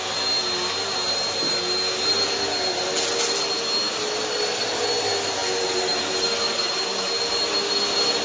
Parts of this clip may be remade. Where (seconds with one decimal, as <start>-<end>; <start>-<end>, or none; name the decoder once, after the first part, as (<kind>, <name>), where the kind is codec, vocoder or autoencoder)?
none